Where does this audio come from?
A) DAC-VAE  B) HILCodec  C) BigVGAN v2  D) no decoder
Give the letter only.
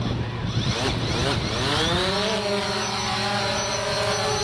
D